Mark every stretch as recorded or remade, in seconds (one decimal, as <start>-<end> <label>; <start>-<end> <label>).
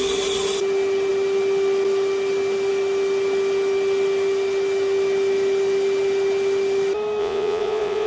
0.0-7.2 recorded; 7.2-8.1 remade